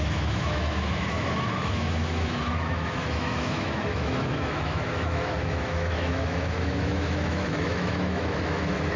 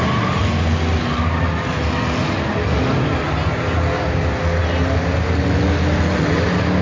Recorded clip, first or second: second